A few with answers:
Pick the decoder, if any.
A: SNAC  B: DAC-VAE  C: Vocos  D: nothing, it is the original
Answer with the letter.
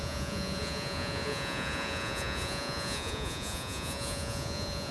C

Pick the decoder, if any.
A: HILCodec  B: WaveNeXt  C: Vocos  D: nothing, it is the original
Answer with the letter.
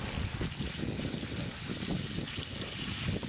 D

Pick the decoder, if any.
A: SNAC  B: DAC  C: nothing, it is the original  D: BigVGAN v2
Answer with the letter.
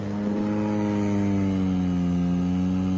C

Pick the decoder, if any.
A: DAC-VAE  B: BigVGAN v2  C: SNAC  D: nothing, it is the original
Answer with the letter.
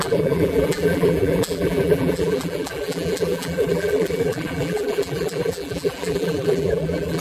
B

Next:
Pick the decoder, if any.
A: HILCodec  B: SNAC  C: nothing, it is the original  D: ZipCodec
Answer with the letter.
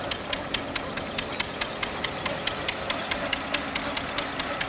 C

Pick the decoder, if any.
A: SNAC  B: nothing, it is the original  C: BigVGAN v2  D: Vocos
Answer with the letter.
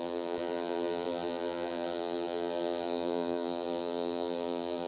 C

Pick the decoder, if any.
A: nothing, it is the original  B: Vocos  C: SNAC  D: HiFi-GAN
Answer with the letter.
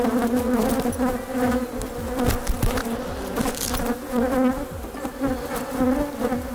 A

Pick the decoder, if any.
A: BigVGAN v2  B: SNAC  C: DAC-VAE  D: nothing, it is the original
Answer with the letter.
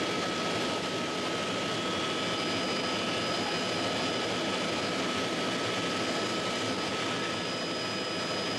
D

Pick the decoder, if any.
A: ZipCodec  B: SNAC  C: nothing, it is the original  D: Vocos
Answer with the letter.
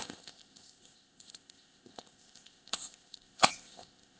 A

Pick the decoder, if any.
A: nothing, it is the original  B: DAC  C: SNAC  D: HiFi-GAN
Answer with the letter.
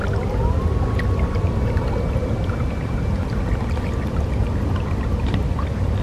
A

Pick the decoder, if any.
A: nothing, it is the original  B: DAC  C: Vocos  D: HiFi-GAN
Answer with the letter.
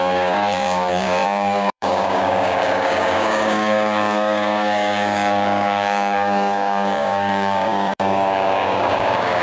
B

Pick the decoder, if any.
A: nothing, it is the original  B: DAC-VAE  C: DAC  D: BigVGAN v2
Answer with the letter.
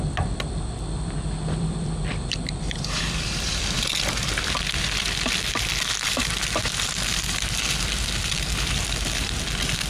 D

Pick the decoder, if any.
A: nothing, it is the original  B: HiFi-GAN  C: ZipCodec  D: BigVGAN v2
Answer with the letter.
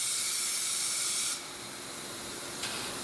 D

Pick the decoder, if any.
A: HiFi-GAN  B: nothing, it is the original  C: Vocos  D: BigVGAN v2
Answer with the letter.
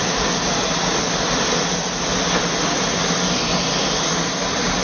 B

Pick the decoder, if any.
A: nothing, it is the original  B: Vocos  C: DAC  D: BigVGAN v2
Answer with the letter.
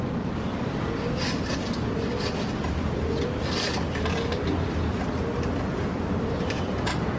D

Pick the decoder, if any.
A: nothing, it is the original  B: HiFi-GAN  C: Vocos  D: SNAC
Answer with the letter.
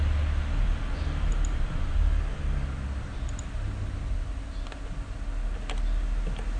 A